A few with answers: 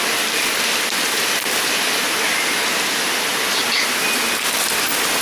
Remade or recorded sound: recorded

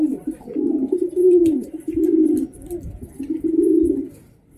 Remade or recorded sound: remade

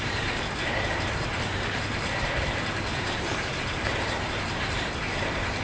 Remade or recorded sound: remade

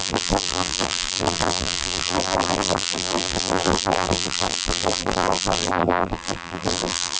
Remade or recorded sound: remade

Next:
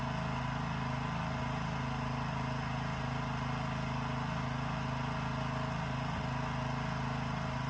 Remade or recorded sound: recorded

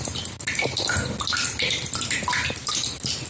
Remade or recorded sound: recorded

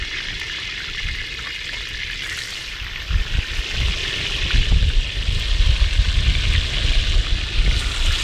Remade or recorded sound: recorded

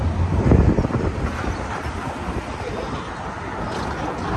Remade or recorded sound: recorded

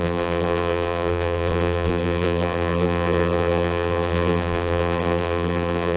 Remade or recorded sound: remade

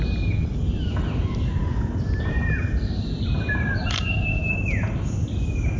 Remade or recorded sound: recorded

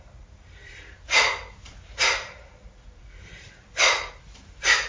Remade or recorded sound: remade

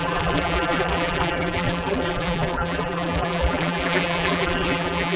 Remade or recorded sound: remade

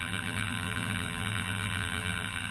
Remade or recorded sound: remade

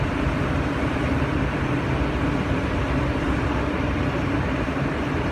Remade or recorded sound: recorded